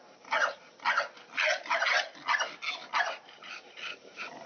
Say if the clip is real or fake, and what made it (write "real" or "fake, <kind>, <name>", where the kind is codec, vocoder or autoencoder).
real